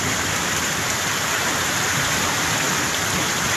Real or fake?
fake